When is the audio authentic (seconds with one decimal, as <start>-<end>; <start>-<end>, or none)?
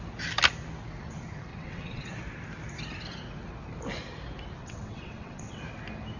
0.0-1.5; 2.1-4.6; 5.6-6.2